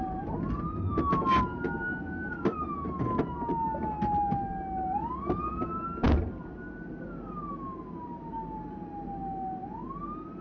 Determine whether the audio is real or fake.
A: real